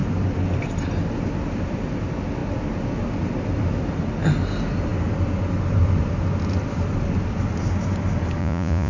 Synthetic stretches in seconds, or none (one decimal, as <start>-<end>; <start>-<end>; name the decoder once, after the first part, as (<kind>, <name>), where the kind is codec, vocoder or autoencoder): 8.4-8.9 (vocoder, Vocos)